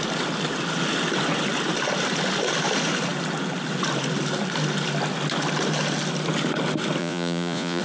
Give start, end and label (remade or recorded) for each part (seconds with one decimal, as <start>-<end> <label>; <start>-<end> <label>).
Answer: 0.0-7.0 recorded; 7.0-7.8 remade